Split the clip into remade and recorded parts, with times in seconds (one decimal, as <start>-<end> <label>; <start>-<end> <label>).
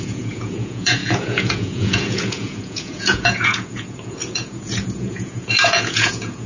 0.0-6.5 remade